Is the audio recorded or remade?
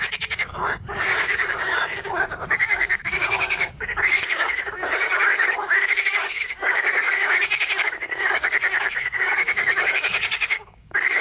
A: remade